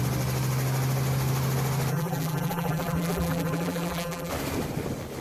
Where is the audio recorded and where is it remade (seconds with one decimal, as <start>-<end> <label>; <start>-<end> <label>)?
0.0-1.9 recorded; 1.9-4.3 remade; 4.3-5.2 recorded